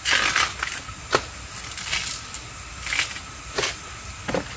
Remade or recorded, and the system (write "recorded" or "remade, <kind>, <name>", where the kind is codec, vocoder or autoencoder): recorded